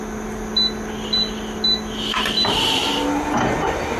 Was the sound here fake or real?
real